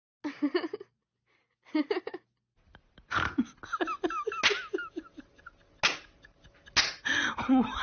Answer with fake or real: real